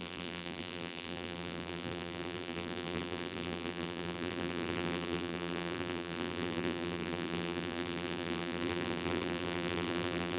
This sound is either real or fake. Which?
fake